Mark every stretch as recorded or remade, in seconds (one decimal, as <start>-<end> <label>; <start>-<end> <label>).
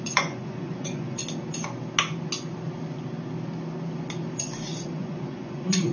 0.0-1.2 remade; 1.2-4.7 recorded; 4.7-5.9 remade